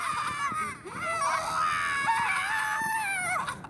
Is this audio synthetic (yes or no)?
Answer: no